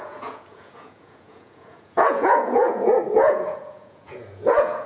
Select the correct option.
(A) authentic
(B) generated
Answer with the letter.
B